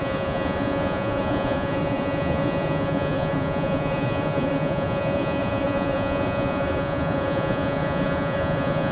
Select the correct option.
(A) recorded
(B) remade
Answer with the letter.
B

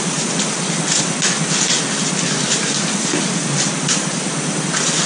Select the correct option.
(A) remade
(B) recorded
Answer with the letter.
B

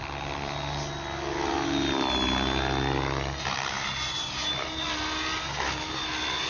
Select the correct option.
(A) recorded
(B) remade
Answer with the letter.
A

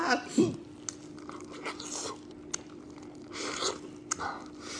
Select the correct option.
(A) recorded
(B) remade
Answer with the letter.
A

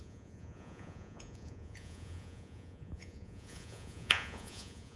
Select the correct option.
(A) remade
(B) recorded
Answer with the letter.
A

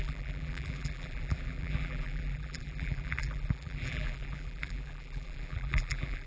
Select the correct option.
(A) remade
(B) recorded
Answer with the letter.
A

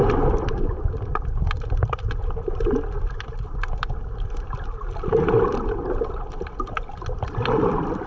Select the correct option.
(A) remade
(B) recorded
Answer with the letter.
A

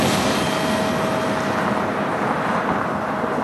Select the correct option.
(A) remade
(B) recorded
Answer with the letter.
B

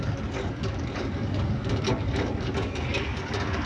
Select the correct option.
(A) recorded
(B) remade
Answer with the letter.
B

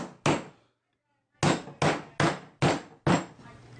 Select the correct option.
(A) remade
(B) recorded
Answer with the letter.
B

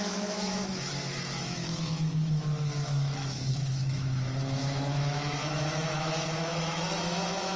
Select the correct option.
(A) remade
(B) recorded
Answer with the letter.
A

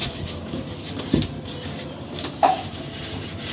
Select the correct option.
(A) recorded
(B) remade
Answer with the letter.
B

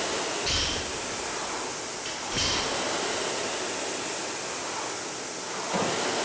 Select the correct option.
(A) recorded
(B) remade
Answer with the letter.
A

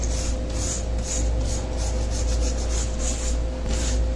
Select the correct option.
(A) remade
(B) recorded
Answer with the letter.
B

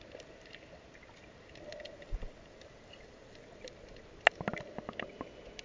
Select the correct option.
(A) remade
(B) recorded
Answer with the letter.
B